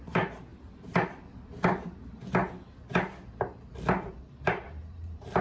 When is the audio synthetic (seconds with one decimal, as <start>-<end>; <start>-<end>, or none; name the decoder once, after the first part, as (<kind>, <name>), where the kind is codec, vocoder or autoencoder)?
0.0-0.5 (vocoder, BigVGAN v2); 3.7-5.4